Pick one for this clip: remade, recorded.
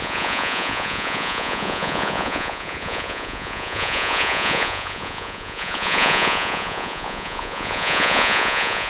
remade